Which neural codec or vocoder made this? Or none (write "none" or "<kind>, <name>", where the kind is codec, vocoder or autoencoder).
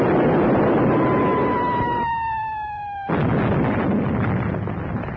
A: none